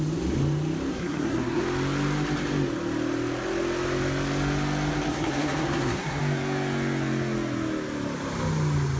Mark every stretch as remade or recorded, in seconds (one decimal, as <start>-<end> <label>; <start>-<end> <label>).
0.0-0.9 recorded; 0.9-1.6 remade; 1.6-5.1 recorded; 5.1-6.2 remade; 6.2-9.0 recorded